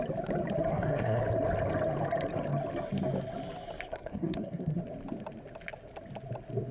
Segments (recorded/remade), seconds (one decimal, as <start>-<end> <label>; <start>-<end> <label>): 0.0-0.7 recorded; 0.7-1.2 remade; 1.2-3.9 recorded; 3.9-4.8 remade; 4.8-6.7 recorded